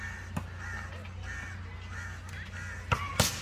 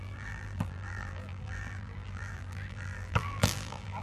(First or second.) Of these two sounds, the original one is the first